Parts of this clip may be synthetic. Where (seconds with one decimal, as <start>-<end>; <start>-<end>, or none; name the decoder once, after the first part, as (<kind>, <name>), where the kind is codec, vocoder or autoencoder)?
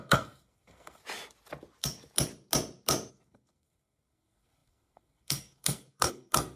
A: 0.0-1.0 (codec, SNAC); 3.1-6.6